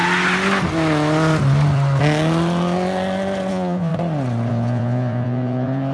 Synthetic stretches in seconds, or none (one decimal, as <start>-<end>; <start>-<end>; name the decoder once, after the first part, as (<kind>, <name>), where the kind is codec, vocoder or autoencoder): 3.5-3.9 (vocoder, Vocos); 4.5-5.9